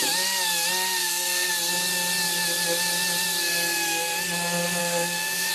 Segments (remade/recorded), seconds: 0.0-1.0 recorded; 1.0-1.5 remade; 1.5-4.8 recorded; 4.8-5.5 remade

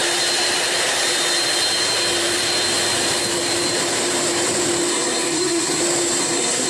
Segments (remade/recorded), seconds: 0.0-4.9 recorded; 4.9-5.8 remade; 5.8-6.2 recorded; 6.2-6.7 remade